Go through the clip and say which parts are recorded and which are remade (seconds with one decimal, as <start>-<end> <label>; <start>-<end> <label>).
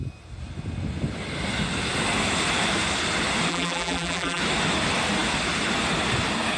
0.0-3.5 recorded; 3.5-4.4 remade; 4.4-6.6 recorded